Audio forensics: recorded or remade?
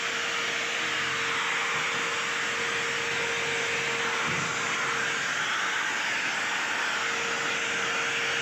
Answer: recorded